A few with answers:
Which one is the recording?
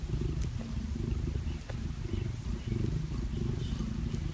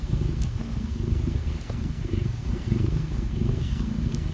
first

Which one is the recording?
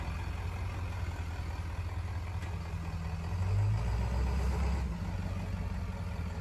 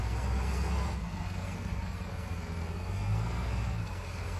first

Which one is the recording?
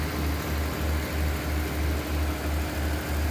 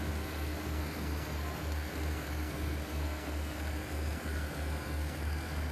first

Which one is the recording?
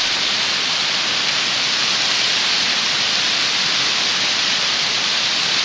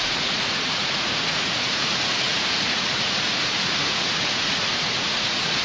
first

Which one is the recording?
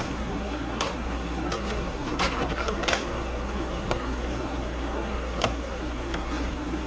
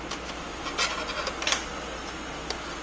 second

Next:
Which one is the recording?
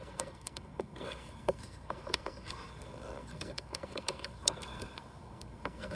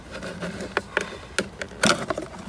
second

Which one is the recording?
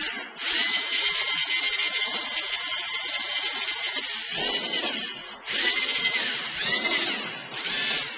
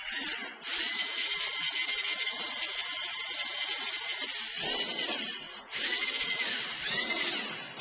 first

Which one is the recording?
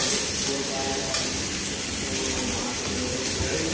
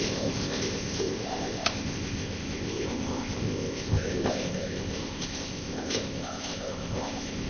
first